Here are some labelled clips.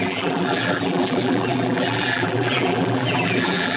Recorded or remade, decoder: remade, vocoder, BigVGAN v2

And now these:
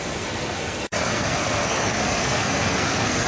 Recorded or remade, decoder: remade, codec, SNAC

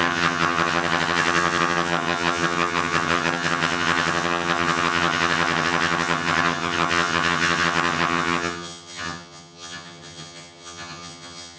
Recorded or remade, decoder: remade, vocoder, HiFi-GAN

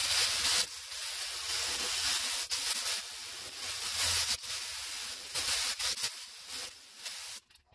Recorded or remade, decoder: recorded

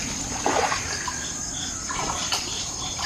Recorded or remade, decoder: recorded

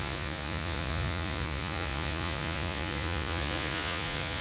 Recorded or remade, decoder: remade, vocoder, Vocos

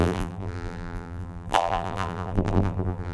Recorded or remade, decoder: remade, vocoder, BigVGAN v2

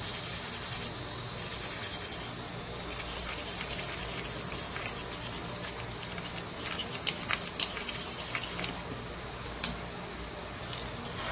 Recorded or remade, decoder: recorded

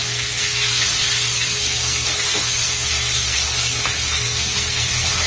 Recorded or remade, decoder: remade, codec, SNAC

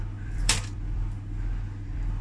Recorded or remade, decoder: remade, vocoder, BigVGAN v2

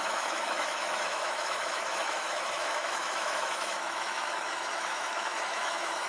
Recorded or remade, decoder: remade, autoencoder, DAC-VAE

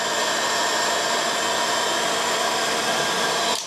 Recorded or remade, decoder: recorded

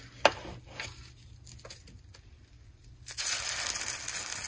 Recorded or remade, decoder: recorded